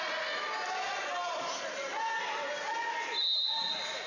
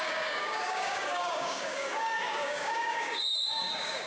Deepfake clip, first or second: second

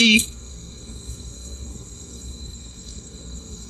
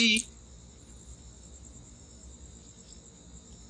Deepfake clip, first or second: first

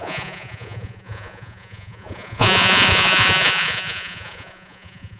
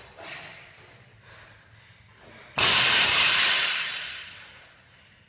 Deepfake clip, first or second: first